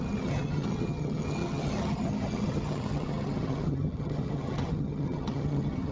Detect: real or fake fake